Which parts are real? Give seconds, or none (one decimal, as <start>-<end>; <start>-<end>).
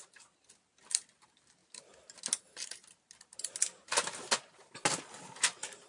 0.0-5.9